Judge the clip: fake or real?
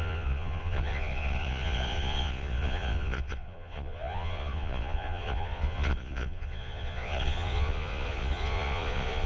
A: fake